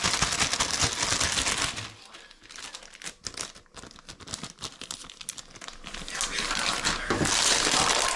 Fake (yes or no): no